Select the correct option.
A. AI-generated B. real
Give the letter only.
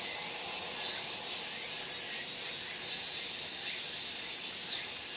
B